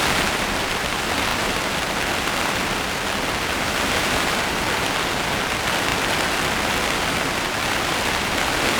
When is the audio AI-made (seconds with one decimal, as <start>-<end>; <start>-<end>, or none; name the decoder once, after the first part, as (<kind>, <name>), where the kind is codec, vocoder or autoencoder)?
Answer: none

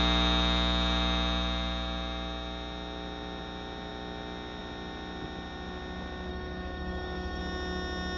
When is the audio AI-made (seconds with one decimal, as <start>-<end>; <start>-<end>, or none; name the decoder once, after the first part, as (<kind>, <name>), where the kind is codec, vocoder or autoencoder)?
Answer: 6.3-7.4 (codec, DAC)

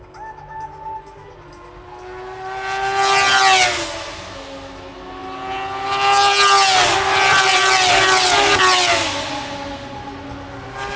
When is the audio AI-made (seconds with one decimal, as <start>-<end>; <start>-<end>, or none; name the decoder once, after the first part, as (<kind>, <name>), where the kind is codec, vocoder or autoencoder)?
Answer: none

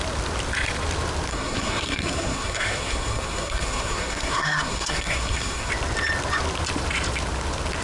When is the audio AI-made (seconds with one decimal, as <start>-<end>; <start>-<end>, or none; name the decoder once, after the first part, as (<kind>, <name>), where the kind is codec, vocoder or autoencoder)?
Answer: 1.3-5.7 (codec, SNAC)

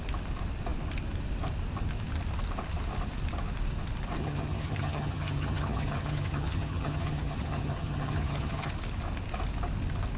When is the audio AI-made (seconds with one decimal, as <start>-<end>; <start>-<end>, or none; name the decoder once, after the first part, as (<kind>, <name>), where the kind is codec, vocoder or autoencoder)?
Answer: 4.2-8.7 (vocoder, HiFi-GAN)

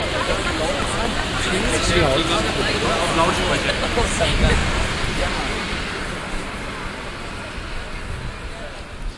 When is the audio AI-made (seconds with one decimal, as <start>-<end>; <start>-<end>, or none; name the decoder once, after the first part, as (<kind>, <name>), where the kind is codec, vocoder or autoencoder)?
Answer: 4.6-7.3 (vocoder, BigVGAN v2)

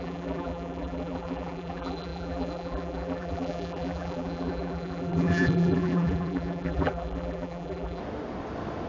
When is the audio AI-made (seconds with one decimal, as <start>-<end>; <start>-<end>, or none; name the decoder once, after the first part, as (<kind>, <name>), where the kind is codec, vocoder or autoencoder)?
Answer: 0.0-8.0 (vocoder, BigVGAN v2)